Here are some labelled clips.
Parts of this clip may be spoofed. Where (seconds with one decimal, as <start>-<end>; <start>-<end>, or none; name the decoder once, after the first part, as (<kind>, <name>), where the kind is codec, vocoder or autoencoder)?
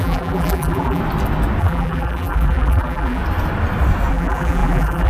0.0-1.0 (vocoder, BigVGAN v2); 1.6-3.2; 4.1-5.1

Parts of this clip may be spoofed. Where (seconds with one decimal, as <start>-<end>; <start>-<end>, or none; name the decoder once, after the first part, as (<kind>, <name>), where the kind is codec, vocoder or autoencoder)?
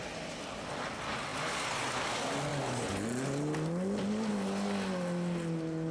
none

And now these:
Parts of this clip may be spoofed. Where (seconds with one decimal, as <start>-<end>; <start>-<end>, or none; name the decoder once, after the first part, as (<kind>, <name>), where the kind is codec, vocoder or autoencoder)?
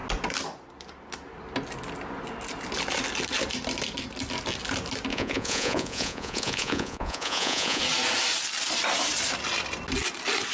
5.1-7.8 (vocoder, Vocos)